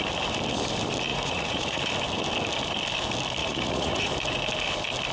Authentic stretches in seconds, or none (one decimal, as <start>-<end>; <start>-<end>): 0.0-1.1; 1.8-3.4; 4.1-5.1